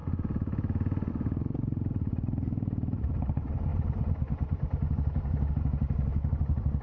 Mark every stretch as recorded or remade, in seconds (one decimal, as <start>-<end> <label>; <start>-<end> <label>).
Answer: 0.0-1.1 recorded; 1.1-3.7 remade; 3.7-5.5 recorded; 5.5-6.8 remade